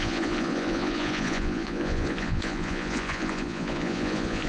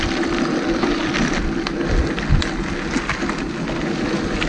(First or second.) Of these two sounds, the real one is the second